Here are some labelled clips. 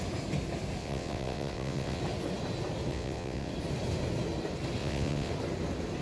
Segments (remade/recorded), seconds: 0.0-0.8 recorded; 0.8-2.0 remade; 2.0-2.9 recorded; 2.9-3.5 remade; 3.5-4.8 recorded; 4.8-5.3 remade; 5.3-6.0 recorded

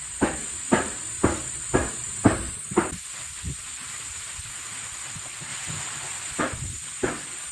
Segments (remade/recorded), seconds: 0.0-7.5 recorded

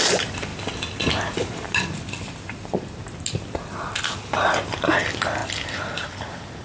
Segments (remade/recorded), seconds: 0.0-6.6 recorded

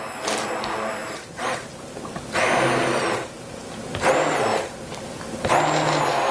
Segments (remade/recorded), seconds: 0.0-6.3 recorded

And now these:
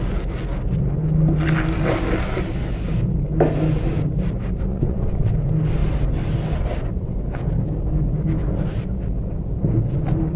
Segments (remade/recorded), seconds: 0.0-4.7 recorded; 4.7-5.3 remade; 5.3-10.4 recorded

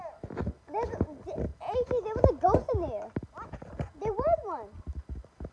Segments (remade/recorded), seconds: 0.0-5.5 recorded

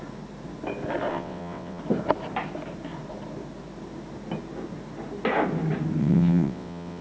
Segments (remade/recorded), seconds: 0.0-1.1 recorded; 1.1-1.8 remade; 1.8-6.0 recorded; 6.0-7.0 remade